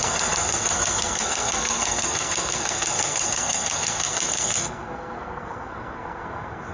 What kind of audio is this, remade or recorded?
remade